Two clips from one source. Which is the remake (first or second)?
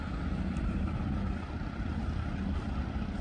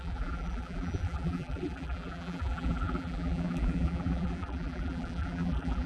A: second